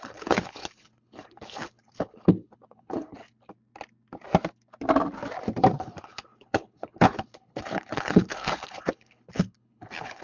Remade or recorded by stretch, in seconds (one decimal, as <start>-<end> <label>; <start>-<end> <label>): 0.0-3.2 remade; 3.2-5.8 recorded; 5.8-10.2 remade